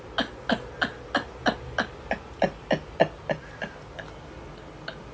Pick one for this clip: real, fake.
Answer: real